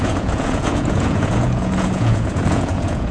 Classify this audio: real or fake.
fake